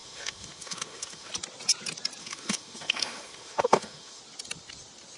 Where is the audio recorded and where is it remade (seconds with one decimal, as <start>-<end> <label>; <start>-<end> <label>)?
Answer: 0.0-1.3 remade; 1.3-2.2 recorded; 2.2-4.2 remade; 4.2-5.2 recorded